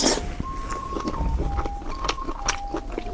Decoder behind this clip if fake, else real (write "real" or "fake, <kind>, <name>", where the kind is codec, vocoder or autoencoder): real